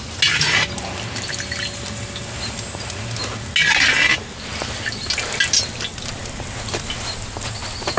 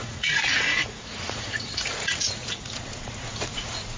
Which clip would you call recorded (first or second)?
first